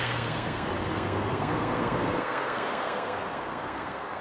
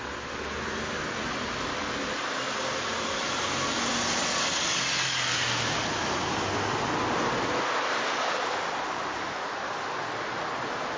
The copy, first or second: first